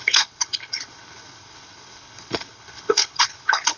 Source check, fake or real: fake